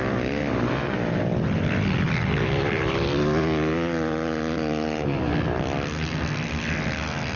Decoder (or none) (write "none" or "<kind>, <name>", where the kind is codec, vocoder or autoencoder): none